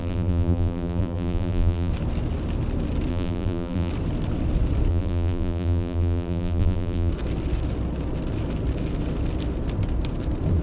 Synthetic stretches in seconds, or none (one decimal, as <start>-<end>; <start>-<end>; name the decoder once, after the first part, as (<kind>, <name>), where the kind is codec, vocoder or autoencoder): 0.0-1.9 (vocoder, BigVGAN v2); 3.1-3.9; 4.9-7.1